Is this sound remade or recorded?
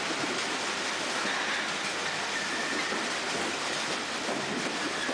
recorded